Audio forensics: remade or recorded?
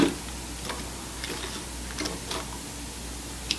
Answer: recorded